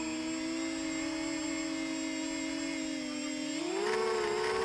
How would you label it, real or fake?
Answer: real